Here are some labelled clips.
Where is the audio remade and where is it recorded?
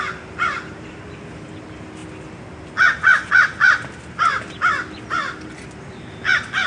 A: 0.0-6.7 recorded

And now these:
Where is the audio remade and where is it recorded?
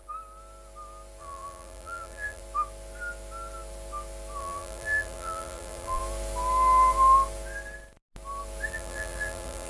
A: 0.0-1.2 recorded; 1.2-2.4 remade; 2.4-4.4 recorded; 4.4-6.0 remade; 6.0-8.7 recorded; 8.7-9.7 remade